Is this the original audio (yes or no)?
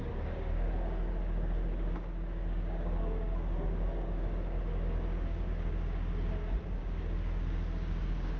no